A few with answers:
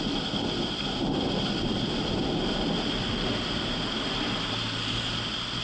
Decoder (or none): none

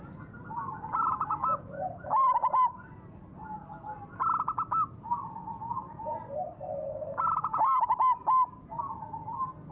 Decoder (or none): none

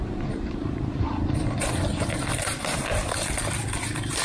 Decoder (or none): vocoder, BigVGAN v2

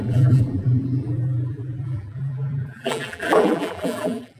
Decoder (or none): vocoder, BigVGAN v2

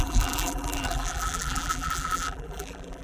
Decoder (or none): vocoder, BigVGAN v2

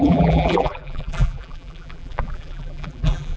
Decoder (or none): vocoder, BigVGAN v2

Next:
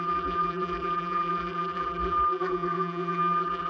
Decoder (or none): vocoder, BigVGAN v2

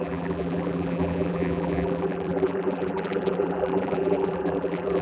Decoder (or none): vocoder, BigVGAN v2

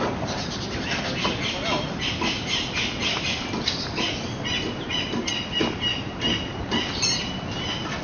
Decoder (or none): none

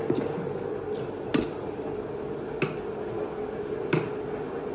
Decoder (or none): none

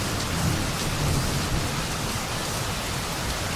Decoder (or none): none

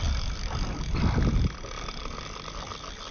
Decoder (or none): none